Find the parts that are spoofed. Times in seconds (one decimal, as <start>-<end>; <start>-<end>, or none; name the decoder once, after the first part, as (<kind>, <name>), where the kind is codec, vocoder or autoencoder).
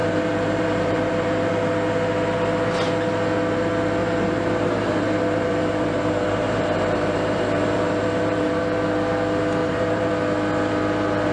0.0-1.5 (vocoder, BigVGAN v2); 4.0-8.6; 9.6-10.1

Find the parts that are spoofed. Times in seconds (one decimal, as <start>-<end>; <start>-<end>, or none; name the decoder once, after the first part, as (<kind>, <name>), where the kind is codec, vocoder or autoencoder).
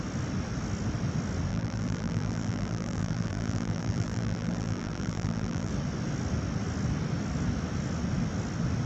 1.5-5.7 (vocoder, BigVGAN v2)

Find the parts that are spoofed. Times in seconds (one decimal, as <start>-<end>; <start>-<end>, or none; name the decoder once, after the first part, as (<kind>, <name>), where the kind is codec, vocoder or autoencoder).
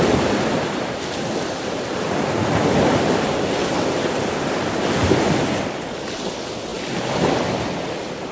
0.0-5.0 (vocoder, BigVGAN v2); 6.7-7.3